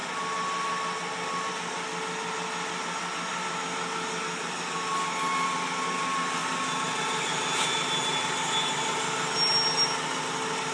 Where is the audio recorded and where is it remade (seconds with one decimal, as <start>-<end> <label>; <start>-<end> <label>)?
0.0-10.7 recorded